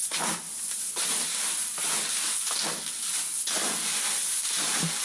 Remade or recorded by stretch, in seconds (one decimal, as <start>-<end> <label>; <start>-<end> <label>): 0.0-5.0 recorded